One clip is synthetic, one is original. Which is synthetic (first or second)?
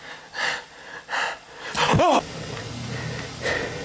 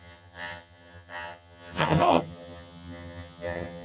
second